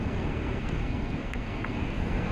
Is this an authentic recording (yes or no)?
no